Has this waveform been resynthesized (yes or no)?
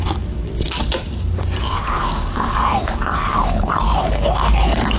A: yes